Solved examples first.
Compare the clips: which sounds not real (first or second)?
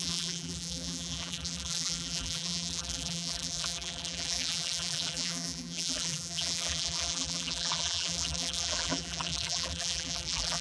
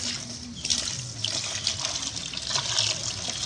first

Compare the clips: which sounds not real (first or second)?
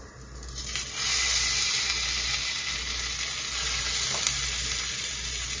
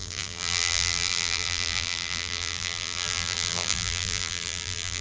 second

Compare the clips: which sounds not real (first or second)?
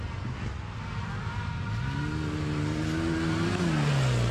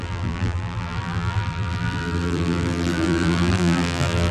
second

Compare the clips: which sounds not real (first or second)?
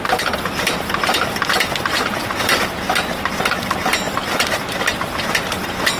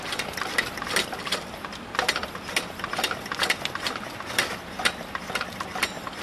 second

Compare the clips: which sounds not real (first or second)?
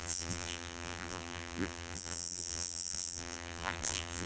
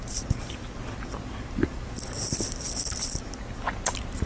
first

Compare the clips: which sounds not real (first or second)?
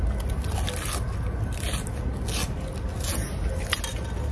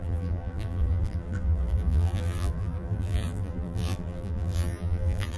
second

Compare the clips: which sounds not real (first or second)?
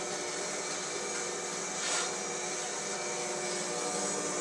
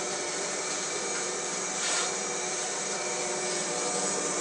second